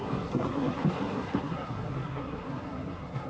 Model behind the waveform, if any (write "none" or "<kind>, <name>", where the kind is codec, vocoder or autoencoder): codec, SNAC